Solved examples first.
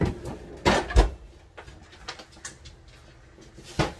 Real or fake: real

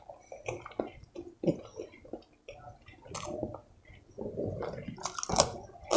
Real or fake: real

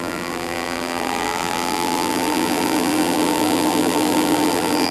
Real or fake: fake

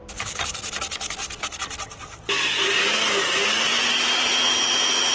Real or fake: real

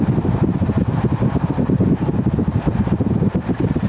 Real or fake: fake